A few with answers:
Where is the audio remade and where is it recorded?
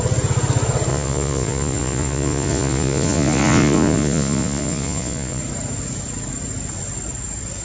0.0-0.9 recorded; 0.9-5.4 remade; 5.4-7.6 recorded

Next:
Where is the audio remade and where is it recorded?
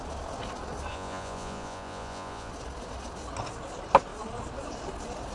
0.0-0.9 recorded; 0.9-2.5 remade; 2.5-5.3 recorded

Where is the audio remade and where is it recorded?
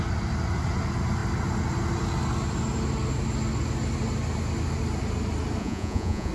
0.0-5.6 recorded; 5.6-6.3 remade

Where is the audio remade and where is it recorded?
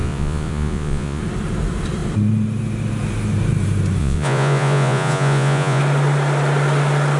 0.0-1.2 remade; 1.2-4.0 recorded; 4.0-5.8 remade; 5.8-7.2 recorded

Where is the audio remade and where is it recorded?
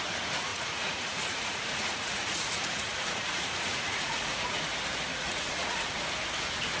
0.0-0.5 recorded; 0.5-4.6 remade; 4.6-5.1 recorded; 5.1-6.0 remade; 6.0-6.8 recorded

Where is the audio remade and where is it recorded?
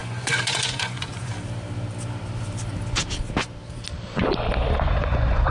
0.0-1.3 remade; 1.3-4.6 recorded; 4.6-5.5 remade